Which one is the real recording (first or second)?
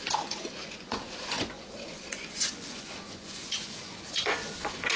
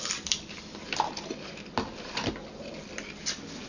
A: second